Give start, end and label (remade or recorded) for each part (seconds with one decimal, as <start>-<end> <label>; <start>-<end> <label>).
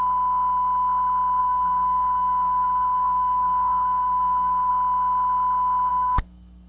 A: 0.0-1.4 recorded; 1.4-4.7 remade; 4.7-5.9 recorded; 5.9-6.7 remade